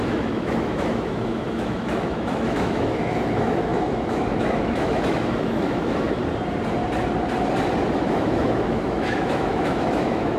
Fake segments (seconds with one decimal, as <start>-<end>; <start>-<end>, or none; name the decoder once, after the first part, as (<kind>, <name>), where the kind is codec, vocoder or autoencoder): 0.0-6.2 (autoencoder, DAC-VAE); 8.0-10.4